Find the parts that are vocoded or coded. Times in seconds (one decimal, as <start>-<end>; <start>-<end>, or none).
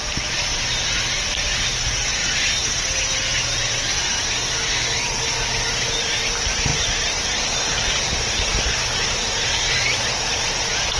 0.0-2.2; 6.0-11.0